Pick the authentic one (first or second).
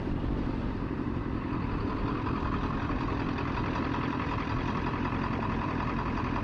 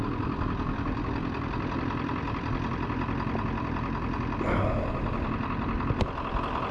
second